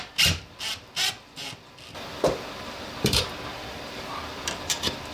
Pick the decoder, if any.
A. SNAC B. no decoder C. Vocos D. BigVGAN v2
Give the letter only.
D